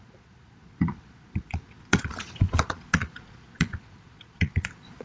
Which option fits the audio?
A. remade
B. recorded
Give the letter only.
A